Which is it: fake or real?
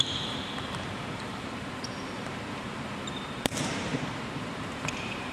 fake